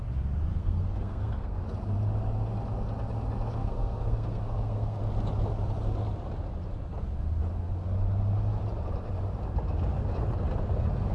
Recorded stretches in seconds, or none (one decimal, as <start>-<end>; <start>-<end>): 0.0-0.5; 1.6-3.6; 5.0-11.1

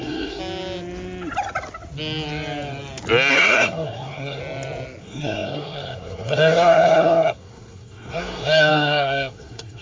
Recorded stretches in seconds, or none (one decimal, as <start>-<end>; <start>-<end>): 0.4-3.3; 4.4-5.0

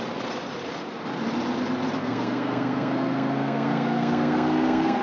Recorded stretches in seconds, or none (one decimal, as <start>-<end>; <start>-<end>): 0.0-2.0

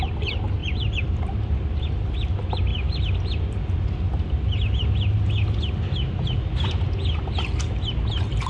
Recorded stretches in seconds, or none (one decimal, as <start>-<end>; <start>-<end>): 0.0-8.5

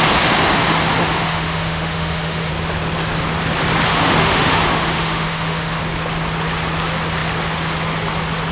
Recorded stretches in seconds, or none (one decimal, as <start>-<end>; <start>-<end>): 0.0-1.0; 2.5-3.9; 5.8-8.5

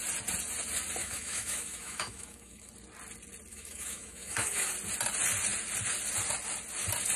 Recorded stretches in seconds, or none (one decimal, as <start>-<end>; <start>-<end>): 0.0-1.0; 2.7-3.5; 4.7-7.2

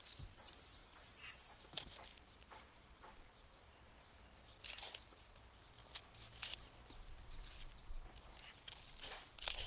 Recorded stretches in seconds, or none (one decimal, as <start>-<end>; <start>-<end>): 0.8-1.5; 5.8-7.4